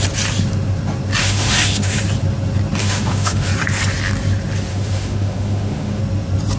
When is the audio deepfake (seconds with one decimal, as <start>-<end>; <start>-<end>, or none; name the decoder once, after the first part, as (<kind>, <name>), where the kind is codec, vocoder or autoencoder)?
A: 1.2-2.0 (autoencoder, DAC-VAE); 2.8-3.5; 4.7-6.0